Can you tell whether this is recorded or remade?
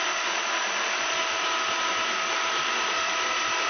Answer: recorded